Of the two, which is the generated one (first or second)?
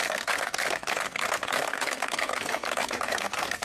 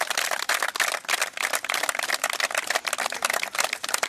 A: first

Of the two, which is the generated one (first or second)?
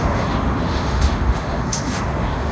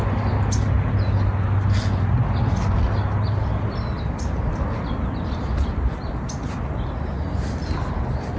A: first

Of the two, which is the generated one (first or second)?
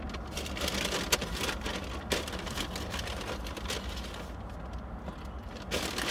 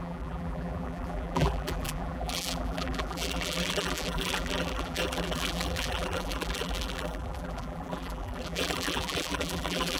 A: second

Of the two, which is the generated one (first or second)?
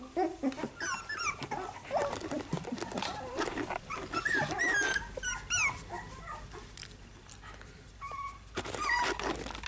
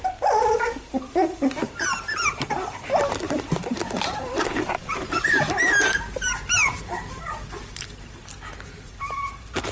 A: second